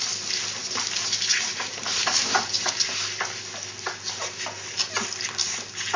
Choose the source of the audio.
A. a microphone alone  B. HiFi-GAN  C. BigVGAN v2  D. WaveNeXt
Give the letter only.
A